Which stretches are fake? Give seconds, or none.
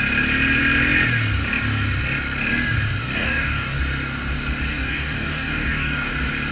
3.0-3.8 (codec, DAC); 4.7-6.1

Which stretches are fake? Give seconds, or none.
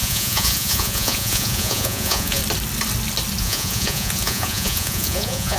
0.0-2.4 (vocoder, Vocos); 3.4-5.6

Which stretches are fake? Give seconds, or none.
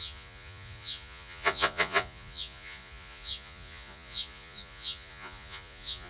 0.0-6.1 (vocoder, Vocos)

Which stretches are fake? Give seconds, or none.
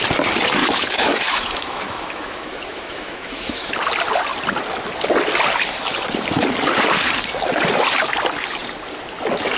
0.6-3.7 (autoencoder, DAC-VAE)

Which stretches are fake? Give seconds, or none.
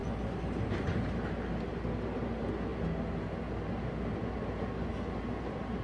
none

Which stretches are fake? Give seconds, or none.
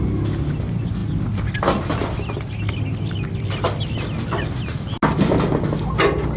none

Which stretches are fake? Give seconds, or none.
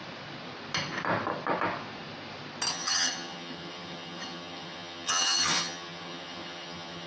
2.7-7.1 (vocoder, HiFi-GAN)